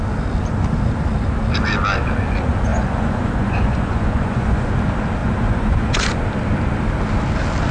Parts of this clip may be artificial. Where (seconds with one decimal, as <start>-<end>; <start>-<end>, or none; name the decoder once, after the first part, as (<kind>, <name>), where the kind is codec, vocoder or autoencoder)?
2.7-4.7 (vocoder, Vocos); 5.2-6.2